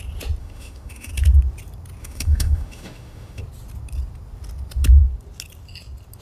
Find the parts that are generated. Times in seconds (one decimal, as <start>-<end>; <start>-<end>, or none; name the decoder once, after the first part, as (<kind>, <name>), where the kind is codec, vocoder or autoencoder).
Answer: 0.4-1.1 (autoencoder, DAC-VAE); 2.0-3.4